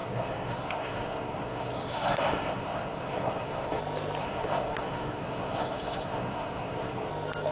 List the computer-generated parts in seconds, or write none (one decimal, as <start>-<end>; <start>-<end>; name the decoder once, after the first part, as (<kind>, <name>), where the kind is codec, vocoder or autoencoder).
0.0-3.8 (codec, SNAC); 4.2-7.1